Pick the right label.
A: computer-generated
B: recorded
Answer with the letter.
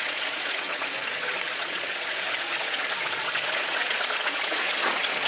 A